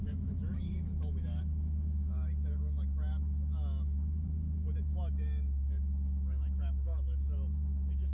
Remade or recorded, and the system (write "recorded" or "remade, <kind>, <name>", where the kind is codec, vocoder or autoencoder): remade, autoencoder, DAC-VAE